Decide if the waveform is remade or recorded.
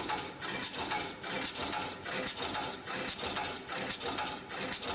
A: recorded